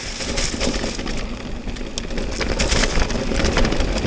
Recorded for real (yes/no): yes